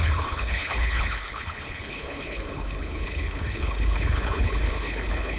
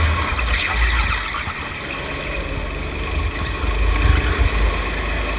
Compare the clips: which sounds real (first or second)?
second